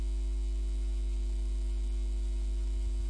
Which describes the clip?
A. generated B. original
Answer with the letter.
B